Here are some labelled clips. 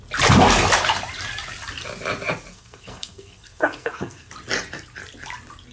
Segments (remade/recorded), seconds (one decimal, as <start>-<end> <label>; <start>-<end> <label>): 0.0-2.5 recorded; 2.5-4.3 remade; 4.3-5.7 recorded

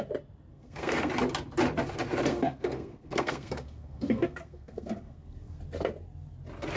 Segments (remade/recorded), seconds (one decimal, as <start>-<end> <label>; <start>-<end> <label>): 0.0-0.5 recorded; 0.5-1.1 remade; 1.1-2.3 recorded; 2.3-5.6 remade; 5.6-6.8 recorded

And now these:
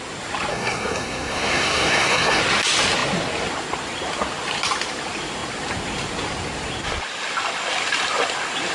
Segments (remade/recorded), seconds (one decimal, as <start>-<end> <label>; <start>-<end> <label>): 0.0-0.5 recorded; 0.5-2.4 remade; 2.4-8.7 recorded

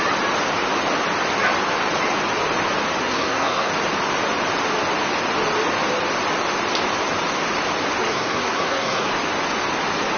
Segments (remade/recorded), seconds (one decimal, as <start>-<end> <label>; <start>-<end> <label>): 0.0-3.0 recorded; 3.0-3.7 remade; 3.7-8.0 recorded; 8.0-9.1 remade; 9.1-10.2 recorded